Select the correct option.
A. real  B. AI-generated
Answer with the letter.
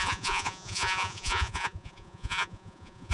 B